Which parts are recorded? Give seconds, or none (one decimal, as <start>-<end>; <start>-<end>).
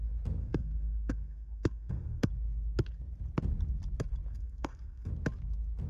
0.0-0.4; 2.3-4.3; 5.1-5.9